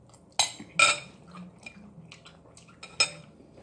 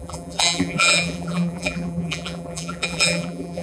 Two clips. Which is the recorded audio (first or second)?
first